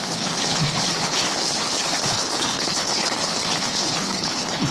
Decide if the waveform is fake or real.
fake